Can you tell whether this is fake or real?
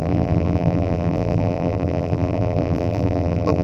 fake